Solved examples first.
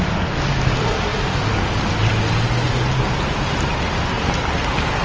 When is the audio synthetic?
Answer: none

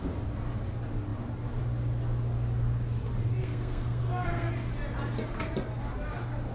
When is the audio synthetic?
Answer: 3.4-4.5